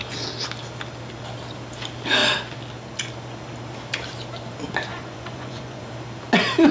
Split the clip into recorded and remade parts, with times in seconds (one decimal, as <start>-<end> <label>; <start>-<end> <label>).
0.0-4.9 recorded; 4.9-5.8 remade; 5.8-6.7 recorded